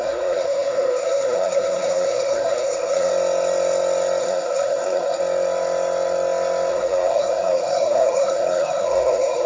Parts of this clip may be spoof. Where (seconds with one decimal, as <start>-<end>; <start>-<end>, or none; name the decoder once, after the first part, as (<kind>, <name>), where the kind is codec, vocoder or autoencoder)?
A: 0.0-3.1 (codec, SNAC); 4.2-5.2; 6.7-9.5

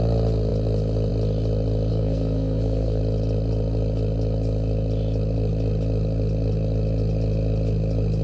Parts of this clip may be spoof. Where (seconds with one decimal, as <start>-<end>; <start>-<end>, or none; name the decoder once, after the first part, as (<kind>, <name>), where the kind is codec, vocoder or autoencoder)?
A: 1.9-3.0 (codec, SNAC)